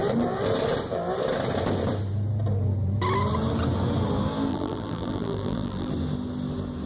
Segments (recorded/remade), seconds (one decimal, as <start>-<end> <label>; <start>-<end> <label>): 0.0-4.5 recorded; 4.5-5.9 remade; 5.9-6.9 recorded